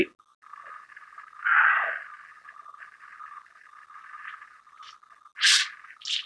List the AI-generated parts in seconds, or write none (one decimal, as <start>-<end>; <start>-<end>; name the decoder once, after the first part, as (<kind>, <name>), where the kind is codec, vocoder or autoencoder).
none